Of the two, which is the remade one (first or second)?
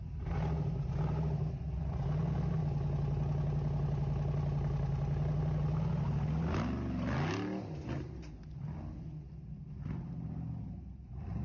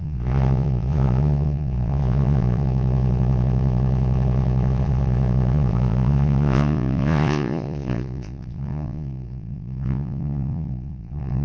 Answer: second